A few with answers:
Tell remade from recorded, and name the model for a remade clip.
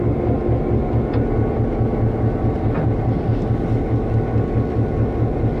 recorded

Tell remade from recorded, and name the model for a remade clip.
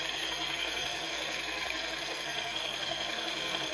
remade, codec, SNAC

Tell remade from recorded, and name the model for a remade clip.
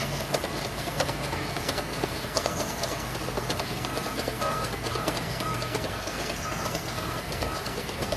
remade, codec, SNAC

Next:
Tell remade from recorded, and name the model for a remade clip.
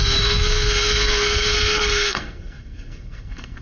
remade, codec, SNAC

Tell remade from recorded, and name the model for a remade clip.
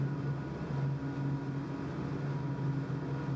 recorded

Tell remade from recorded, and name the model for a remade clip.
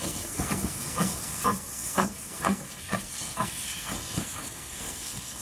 remade, codec, SNAC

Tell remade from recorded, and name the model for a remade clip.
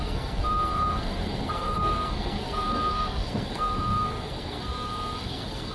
remade, codec, SNAC